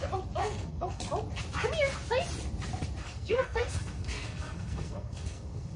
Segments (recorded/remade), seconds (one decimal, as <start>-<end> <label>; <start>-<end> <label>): 0.0-0.4 recorded; 0.4-1.0 remade; 1.0-3.0 recorded; 3.0-5.8 remade